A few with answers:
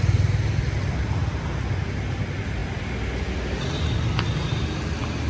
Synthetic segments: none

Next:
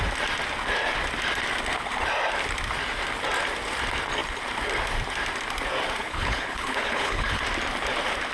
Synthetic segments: 6.0-7.4 (codec, HILCodec)

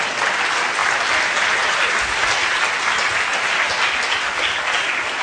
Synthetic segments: none

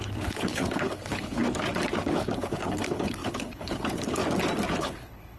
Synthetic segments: 0.0-1.4 (codec, HILCodec); 2.0-4.2; 4.8-5.4